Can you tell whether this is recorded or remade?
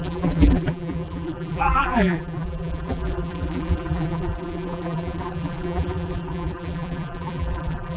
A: remade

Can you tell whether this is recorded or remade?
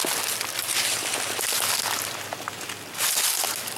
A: recorded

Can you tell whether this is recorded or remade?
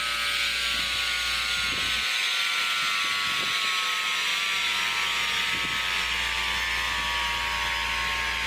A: recorded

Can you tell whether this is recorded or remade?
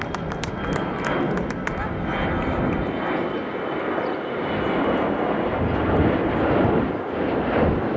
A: remade